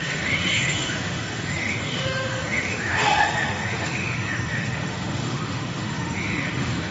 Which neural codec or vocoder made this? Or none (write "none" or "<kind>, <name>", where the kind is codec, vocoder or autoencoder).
autoencoder, DAC-VAE